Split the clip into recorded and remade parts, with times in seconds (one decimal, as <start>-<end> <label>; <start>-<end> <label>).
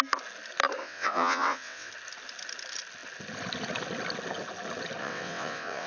0.0-0.8 recorded; 0.8-1.9 remade; 1.9-5.0 recorded; 5.0-5.9 remade